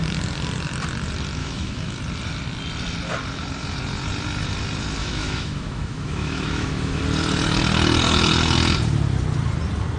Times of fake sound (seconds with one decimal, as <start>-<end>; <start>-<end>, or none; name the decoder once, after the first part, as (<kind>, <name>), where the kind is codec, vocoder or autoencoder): 1.4-2.0 (autoencoder, DAC-VAE); 5.0-7.0